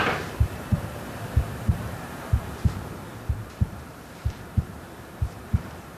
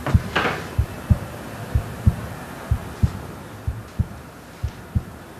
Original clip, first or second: second